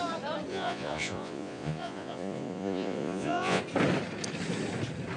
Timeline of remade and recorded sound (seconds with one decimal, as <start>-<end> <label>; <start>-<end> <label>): 0.0-0.5 recorded; 0.5-3.6 remade; 3.6-5.2 recorded